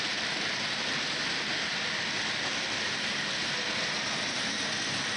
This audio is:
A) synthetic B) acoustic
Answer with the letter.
B